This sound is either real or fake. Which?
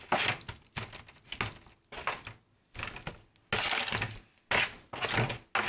real